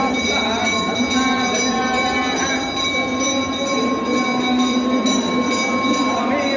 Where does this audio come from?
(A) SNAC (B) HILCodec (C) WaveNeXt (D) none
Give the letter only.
D